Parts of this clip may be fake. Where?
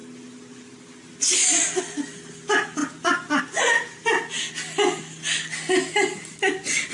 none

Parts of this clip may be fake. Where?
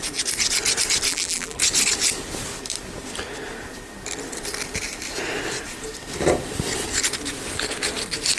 1.1-1.6 (vocoder, BigVGAN v2)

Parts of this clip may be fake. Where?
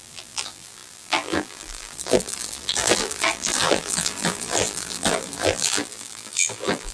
0.0-6.9 (vocoder, BigVGAN v2)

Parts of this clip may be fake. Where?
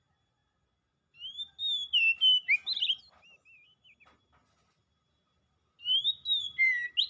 none